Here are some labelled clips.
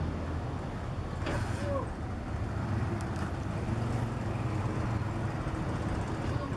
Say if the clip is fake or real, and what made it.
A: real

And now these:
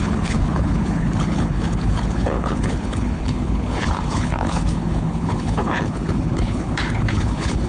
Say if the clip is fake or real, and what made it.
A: fake, codec, HILCodec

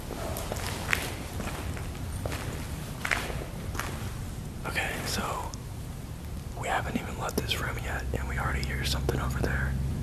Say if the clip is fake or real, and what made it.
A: fake, vocoder, BigVGAN v2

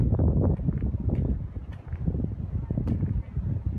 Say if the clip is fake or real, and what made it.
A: real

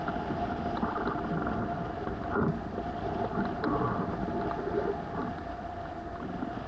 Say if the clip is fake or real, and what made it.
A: real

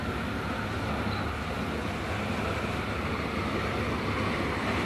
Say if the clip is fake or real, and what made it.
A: real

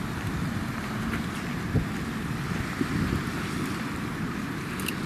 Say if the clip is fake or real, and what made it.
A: real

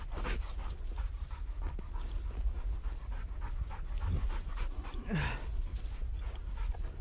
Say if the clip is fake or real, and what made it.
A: real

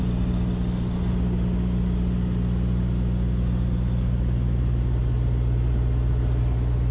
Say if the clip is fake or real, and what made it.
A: real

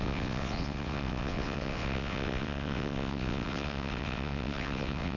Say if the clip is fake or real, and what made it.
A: fake, vocoder, WaveNeXt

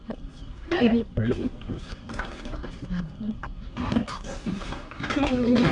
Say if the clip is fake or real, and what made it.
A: fake, codec, SNAC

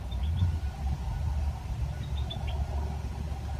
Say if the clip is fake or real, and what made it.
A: real